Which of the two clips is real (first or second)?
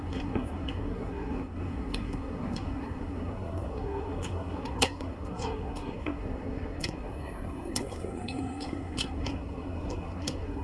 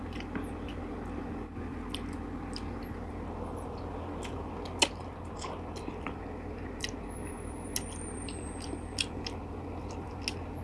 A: second